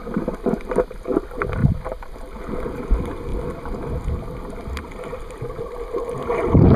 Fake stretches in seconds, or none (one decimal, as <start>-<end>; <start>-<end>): none